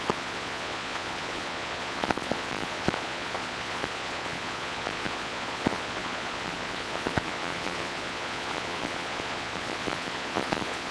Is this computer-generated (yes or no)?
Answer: yes